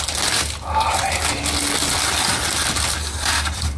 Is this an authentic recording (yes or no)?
yes